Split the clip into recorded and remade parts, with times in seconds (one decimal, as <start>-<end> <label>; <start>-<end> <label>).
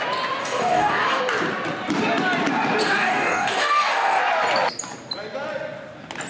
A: 0.0-0.4 recorded; 0.4-1.2 remade; 1.2-2.8 recorded; 2.8-4.2 remade; 4.2-6.3 recorded